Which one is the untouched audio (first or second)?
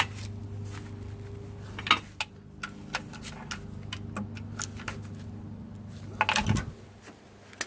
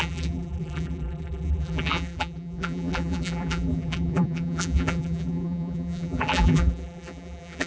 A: first